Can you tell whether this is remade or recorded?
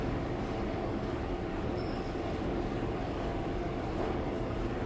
remade